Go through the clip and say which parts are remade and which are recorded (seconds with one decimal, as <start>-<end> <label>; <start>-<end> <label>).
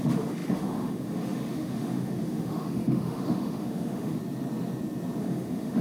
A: 0.0-4.2 remade; 4.2-5.2 recorded; 5.2-5.8 remade